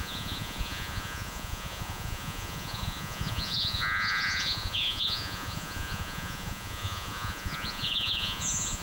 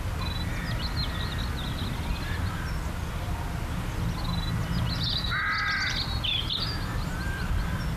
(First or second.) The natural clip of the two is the second